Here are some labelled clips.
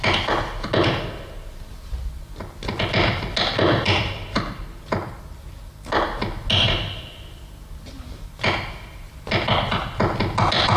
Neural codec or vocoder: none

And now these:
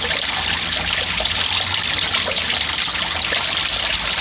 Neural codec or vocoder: none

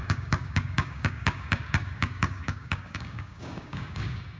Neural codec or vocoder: codec, DAC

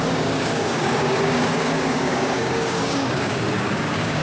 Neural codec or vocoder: codec, DAC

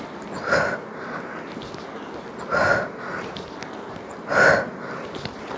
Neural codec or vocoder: none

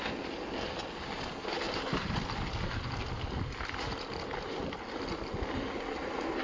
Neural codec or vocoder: none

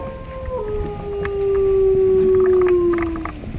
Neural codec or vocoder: none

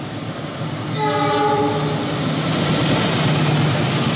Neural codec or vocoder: none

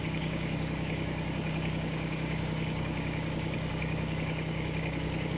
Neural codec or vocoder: codec, DAC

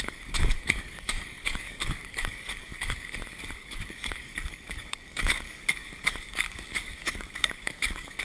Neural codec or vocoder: codec, DAC